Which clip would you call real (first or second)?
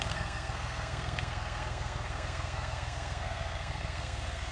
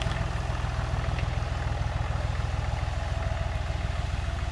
second